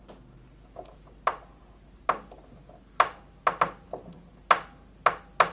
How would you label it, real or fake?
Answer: real